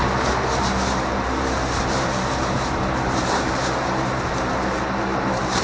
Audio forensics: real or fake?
fake